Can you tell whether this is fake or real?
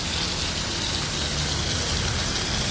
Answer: real